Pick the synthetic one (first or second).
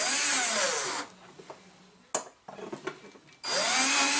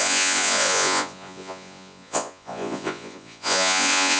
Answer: second